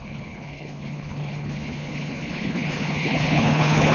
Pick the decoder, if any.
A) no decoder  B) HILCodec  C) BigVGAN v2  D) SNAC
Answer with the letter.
B